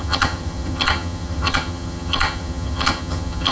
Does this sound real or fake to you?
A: fake